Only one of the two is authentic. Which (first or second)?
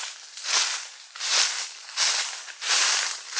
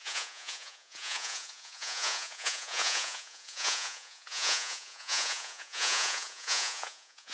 first